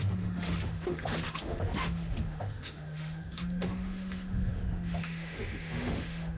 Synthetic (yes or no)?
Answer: yes